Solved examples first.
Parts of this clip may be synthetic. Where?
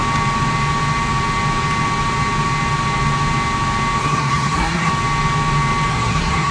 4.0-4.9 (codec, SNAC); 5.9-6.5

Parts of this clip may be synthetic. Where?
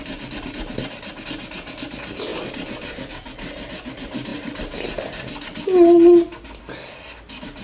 none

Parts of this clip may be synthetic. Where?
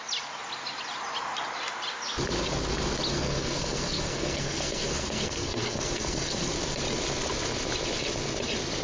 3.1-6.5 (codec, SNAC)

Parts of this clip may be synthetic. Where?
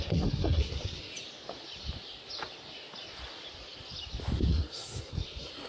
0.0-1.1 (codec, SNAC); 4.5-5.7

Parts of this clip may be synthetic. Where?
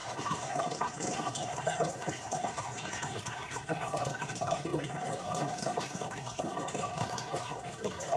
0.0-8.2 (codec, SNAC)